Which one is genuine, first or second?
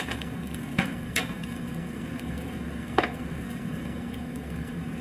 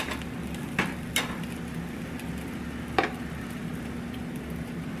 second